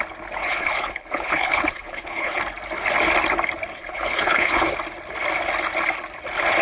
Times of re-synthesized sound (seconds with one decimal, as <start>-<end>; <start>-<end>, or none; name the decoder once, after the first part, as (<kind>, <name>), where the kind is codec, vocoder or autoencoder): 0.4-2.4 (codec, HILCodec); 3.7-4.7